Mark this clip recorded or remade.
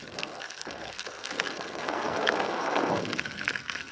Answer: remade